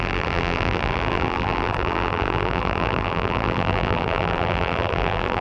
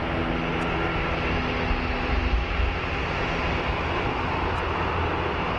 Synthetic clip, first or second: first